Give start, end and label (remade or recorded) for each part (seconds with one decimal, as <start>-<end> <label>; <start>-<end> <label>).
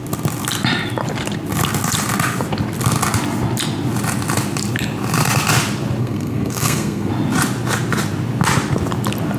0.0-6.0 recorded; 6.0-7.1 remade; 7.1-9.4 recorded